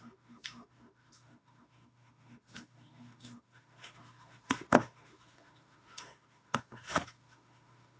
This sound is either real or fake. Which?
fake